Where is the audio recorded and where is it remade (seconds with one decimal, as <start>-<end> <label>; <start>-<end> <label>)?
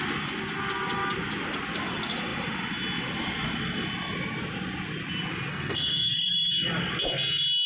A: 0.0-5.5 recorded; 5.5-6.5 remade; 6.5-7.7 recorded